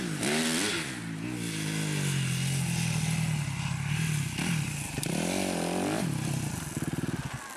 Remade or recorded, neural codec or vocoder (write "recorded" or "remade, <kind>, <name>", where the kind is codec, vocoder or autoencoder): recorded